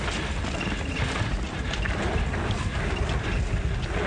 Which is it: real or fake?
real